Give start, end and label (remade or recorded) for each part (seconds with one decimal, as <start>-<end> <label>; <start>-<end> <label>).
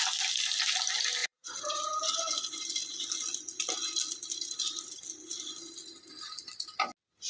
0.0-1.2 recorded; 1.2-1.8 remade; 1.8-7.3 recorded